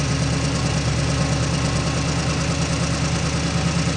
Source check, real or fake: real